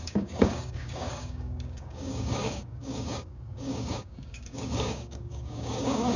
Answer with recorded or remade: remade